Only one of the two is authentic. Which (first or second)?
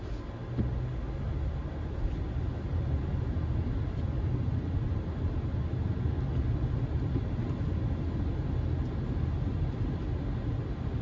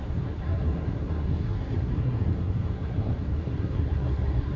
first